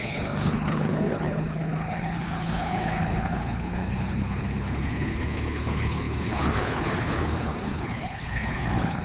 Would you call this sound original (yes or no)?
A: no